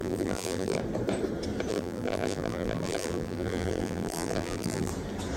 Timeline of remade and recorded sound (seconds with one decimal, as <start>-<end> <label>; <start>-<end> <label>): 0.0-0.8 remade; 0.8-1.7 recorded; 1.7-4.9 remade; 4.9-5.4 recorded